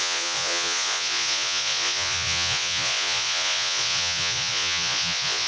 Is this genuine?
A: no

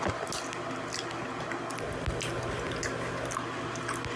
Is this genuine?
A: yes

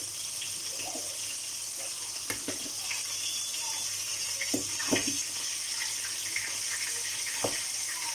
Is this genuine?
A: yes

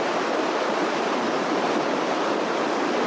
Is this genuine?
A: yes